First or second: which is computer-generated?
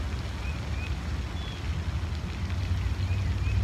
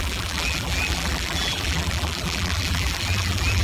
second